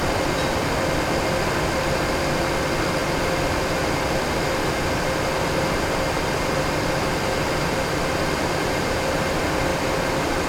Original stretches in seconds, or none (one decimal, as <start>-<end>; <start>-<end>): 0.0-10.5